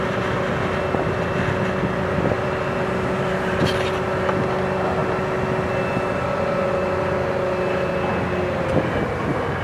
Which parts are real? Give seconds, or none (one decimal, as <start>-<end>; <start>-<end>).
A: 0.0-9.6

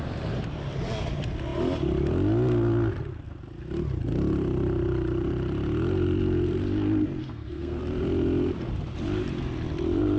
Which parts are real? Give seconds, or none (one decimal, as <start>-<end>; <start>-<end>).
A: 0.0-7.2; 7.8-10.2

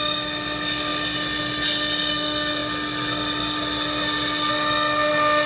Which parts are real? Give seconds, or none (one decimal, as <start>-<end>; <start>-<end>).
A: 0.0-5.5